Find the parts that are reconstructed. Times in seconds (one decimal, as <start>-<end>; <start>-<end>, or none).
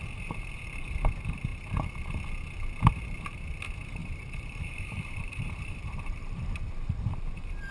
4.0-6.7